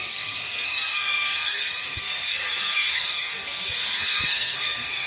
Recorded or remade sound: remade